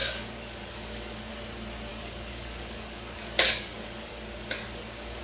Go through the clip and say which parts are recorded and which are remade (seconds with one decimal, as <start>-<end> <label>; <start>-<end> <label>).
0.0-1.3 remade; 1.3-1.9 recorded; 1.9-5.2 remade